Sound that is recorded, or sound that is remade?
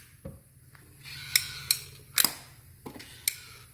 recorded